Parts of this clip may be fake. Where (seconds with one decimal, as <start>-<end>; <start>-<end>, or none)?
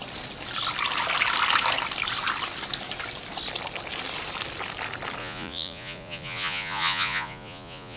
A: 5.2-8.0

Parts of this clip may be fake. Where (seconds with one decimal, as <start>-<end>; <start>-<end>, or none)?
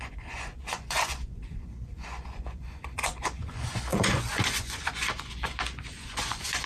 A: 0.0-6.7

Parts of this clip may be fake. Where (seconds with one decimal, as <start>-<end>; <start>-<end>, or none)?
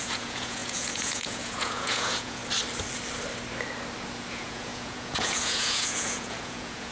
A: 0.0-2.4; 4.3-6.9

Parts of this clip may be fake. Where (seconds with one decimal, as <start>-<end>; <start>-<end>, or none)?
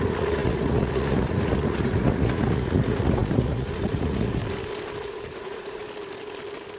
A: 0.0-4.4; 5.0-5.8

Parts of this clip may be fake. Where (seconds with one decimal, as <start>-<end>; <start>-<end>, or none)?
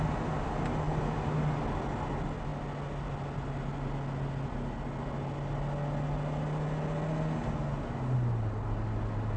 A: none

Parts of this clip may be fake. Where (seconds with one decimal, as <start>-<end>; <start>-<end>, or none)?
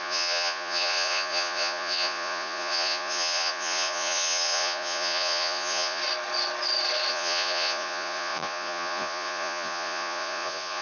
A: 0.0-6.0; 7.1-10.8